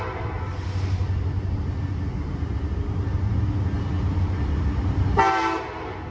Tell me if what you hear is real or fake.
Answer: real